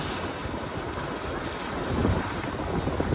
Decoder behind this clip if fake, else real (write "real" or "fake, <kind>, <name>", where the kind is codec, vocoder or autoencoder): real